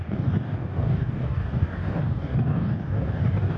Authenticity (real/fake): fake